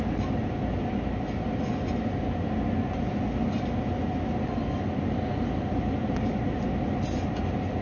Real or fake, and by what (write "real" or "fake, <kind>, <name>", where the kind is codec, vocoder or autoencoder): real